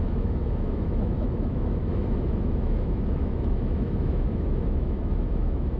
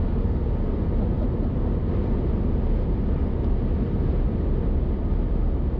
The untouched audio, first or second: second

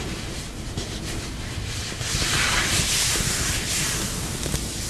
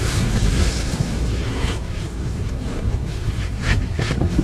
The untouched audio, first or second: first